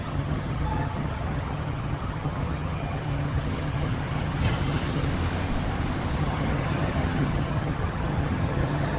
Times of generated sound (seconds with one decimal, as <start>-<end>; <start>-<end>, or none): 0.0-5.1; 6.1-9.0